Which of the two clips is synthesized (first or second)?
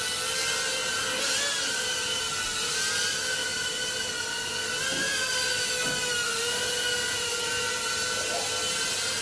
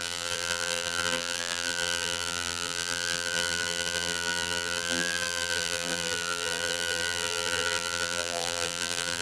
second